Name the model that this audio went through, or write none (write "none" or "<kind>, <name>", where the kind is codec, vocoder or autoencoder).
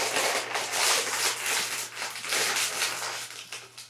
none